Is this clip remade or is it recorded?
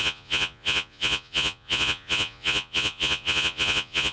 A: remade